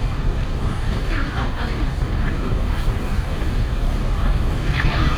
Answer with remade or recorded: remade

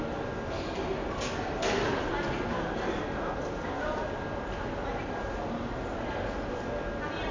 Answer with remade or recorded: recorded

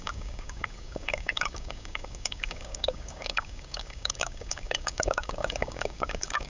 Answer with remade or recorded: remade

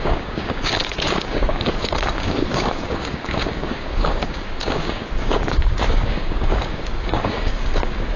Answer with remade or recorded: remade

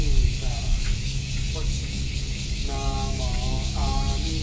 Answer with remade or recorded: remade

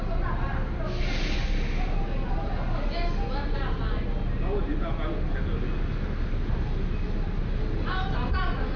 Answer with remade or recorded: recorded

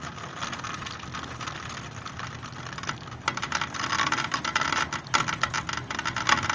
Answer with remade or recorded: recorded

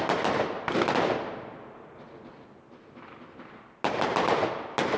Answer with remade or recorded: recorded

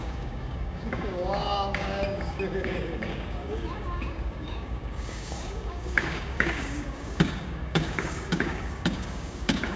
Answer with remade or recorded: remade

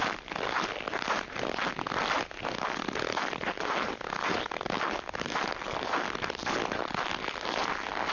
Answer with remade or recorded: recorded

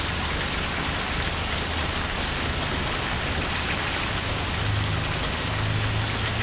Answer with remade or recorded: recorded